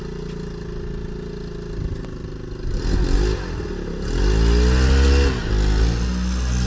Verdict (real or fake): real